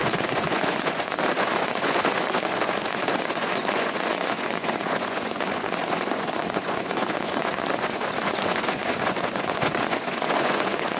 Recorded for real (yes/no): no